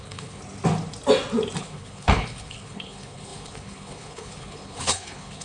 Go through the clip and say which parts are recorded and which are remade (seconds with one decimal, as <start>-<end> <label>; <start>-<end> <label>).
0.0-0.4 remade; 0.4-1.6 recorded; 1.6-5.4 remade